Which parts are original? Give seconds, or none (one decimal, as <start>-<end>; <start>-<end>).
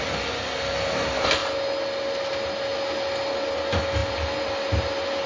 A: 0.0-5.3